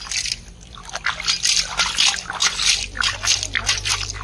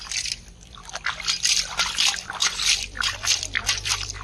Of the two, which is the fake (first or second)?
second